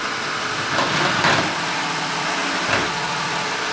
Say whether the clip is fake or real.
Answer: real